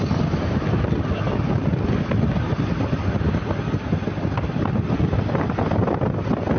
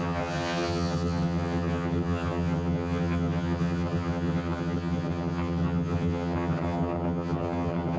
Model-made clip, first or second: second